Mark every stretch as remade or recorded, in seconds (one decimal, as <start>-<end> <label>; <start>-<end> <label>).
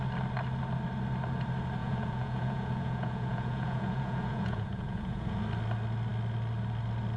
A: 0.0-1.8 recorded; 1.8-5.4 remade; 5.4-7.2 recorded